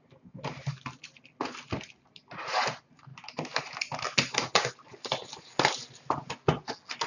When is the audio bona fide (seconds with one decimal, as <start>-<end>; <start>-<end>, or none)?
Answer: 0.0-7.1